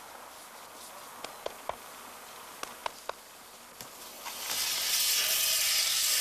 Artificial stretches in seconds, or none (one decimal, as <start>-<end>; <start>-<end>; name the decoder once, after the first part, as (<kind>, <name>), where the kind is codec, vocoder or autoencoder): none